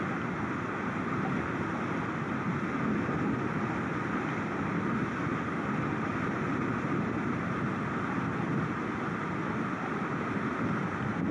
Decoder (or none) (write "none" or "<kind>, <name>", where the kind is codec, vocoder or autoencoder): none